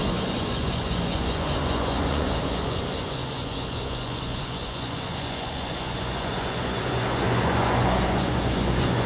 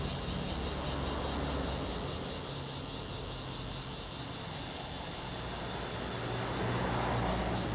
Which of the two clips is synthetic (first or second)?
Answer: first